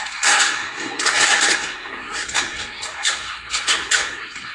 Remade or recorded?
remade